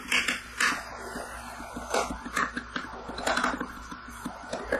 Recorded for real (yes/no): yes